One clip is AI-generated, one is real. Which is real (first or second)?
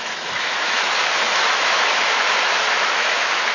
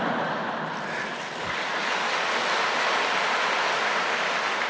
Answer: second